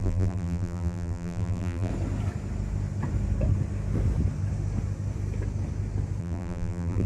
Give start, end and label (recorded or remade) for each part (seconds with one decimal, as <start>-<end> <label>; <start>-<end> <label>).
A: 0.0-1.9 remade; 1.9-6.2 recorded; 6.2-7.1 remade